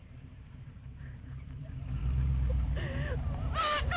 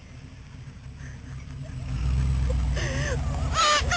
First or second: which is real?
second